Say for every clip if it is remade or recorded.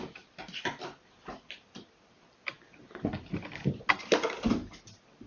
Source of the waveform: recorded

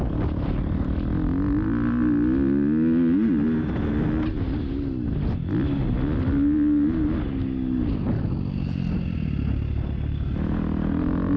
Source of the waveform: recorded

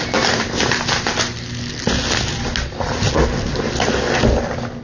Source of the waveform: recorded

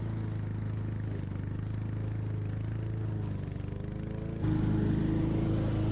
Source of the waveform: recorded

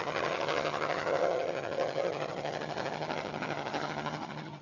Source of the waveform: remade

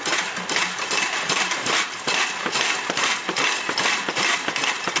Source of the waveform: recorded